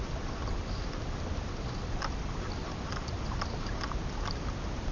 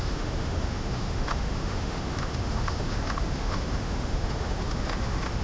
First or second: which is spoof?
second